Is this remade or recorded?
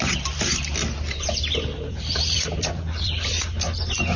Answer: remade